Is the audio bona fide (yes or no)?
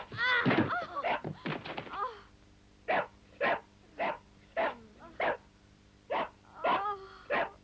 no